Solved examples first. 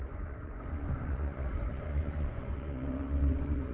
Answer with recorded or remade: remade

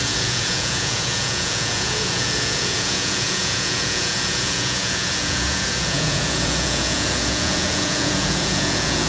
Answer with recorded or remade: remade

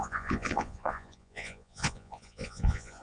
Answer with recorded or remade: remade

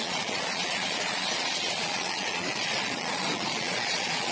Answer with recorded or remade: remade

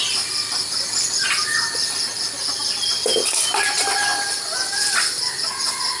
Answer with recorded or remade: recorded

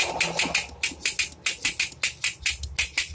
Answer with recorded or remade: recorded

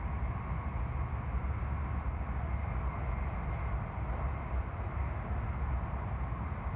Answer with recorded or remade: recorded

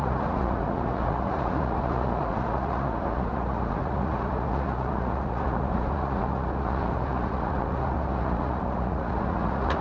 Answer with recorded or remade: remade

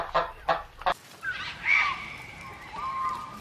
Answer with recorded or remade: recorded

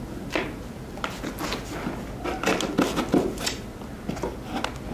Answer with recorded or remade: recorded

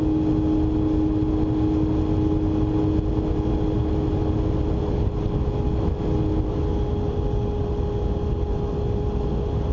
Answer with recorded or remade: recorded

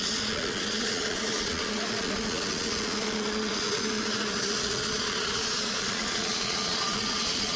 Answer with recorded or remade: remade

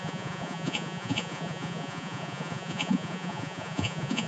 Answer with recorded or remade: remade